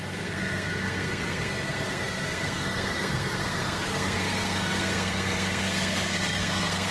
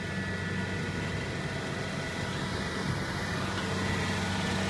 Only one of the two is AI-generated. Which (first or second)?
first